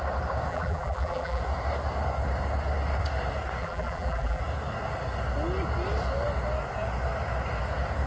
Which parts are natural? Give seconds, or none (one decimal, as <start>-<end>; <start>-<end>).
0.0-0.5; 1.4-3.6; 4.4-8.1